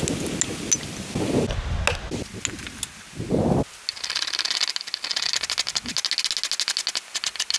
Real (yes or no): yes